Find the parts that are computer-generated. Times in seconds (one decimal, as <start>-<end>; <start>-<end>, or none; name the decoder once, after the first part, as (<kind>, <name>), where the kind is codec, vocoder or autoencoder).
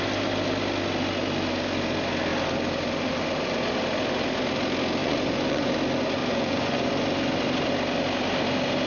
5.0-5.7 (vocoder, Vocos); 6.2-6.9